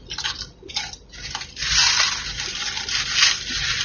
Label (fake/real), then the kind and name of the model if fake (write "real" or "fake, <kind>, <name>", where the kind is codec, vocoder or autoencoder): real